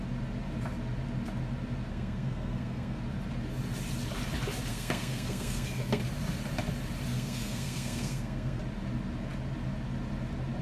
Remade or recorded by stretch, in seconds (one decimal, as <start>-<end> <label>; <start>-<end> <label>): 0.0-1.9 recorded; 1.9-3.0 remade; 3.0-4.7 recorded; 4.7-6.0 remade; 6.0-7.1 recorded; 7.1-8.6 remade; 8.6-10.6 recorded